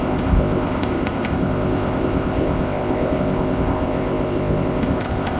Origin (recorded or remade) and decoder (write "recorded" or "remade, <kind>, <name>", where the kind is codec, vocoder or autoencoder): remade, codec, ZipCodec